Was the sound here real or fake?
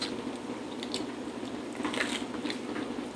real